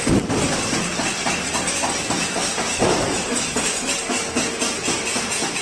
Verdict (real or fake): real